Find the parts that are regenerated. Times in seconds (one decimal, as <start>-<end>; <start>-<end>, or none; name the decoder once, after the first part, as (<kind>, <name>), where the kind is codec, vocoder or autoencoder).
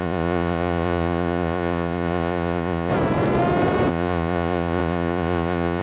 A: 0.0-2.9 (vocoder, Vocos); 3.9-5.8